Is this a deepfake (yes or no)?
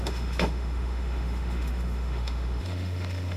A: yes